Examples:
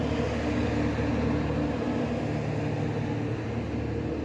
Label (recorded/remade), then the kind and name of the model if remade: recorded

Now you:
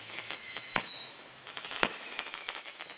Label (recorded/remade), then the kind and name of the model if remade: remade, autoencoder, DAC-VAE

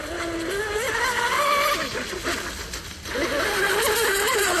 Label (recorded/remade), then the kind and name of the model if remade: recorded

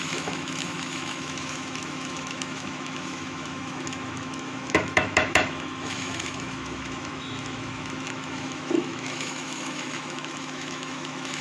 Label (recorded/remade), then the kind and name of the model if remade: remade, autoencoder, DAC-VAE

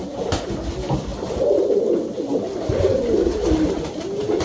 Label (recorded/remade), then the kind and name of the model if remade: recorded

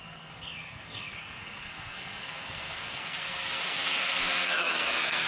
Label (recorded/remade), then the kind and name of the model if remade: remade, codec, SNAC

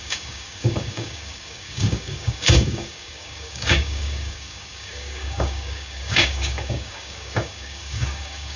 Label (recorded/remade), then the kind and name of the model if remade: remade, codec, DAC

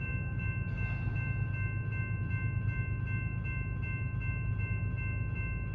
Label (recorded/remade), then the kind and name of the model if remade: recorded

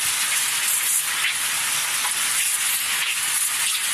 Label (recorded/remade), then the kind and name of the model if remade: recorded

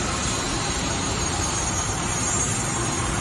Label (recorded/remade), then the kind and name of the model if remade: remade, vocoder, BigVGAN v2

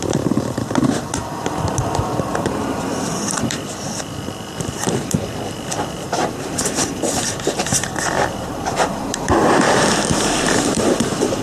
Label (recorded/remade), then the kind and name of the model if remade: remade, vocoder, BigVGAN v2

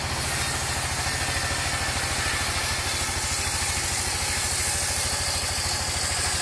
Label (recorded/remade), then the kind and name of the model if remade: recorded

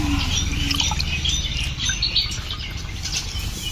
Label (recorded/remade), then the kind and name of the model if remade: recorded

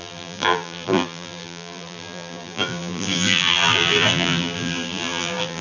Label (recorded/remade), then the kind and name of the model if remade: remade, vocoder, BigVGAN v2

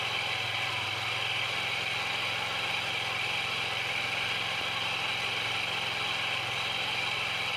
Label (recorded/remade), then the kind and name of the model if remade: recorded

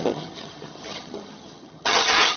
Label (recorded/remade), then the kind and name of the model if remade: remade, vocoder, HiFi-GAN